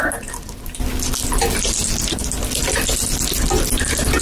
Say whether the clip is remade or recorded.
recorded